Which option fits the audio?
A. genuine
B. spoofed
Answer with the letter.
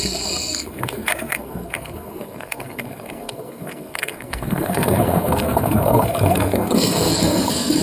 B